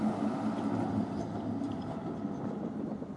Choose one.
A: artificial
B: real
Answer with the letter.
B